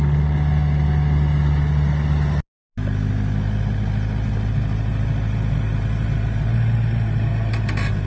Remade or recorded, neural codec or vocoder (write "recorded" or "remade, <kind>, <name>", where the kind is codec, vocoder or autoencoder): recorded